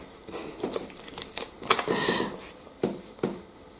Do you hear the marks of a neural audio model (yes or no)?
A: no